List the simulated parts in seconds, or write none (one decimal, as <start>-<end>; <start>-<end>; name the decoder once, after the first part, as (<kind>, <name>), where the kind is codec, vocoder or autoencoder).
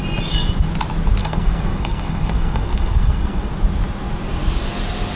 1.2-3.5 (codec, SNAC)